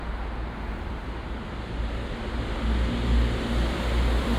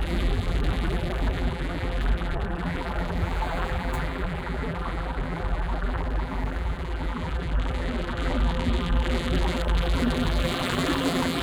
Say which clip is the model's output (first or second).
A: second